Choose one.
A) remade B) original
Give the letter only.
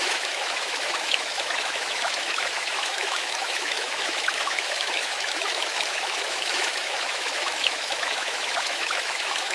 A